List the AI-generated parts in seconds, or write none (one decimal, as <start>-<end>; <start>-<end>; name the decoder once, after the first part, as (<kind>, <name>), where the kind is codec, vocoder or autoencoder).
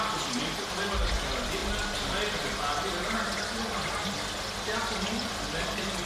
none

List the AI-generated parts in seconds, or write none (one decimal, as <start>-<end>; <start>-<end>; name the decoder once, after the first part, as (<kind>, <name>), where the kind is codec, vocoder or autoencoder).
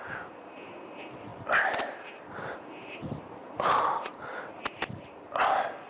none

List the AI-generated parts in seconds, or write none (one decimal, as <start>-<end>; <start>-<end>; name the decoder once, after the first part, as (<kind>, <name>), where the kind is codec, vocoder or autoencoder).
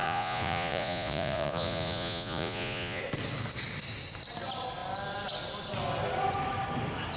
0.0-3.0 (vocoder, Vocos)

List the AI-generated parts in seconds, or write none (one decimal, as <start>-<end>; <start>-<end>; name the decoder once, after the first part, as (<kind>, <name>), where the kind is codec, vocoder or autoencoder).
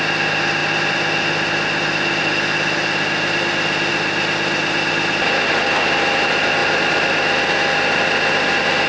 none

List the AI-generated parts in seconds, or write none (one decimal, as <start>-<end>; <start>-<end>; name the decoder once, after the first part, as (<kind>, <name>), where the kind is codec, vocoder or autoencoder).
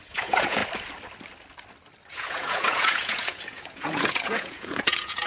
0.0-0.6 (vocoder, Vocos); 2.1-5.3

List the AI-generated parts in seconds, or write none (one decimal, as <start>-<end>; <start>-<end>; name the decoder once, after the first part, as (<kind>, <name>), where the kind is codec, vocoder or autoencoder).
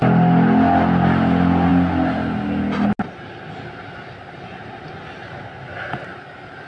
none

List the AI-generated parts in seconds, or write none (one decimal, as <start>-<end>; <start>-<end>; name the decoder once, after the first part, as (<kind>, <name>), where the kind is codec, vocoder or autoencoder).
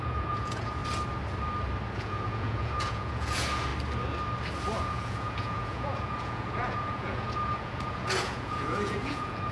0.0-0.8 (vocoder, Vocos); 1.9-3.7; 4.8-9.5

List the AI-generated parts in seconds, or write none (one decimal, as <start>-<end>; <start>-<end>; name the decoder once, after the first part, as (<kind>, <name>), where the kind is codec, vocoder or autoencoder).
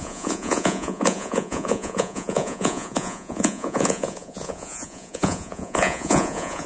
0.0-6.7 (vocoder, Vocos)